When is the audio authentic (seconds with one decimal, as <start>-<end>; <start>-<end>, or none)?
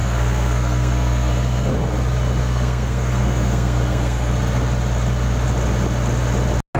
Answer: 1.7-2.4; 4.3-6.8